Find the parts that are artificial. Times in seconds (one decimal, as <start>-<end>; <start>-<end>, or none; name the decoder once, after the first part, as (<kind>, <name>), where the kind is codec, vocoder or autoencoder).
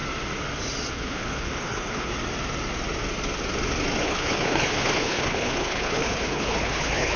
0.9-2.1 (codec, HILCodec); 4.0-7.2